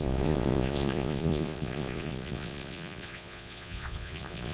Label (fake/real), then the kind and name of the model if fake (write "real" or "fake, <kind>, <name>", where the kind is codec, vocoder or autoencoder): fake, vocoder, Vocos